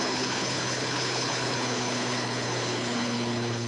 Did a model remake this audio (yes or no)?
yes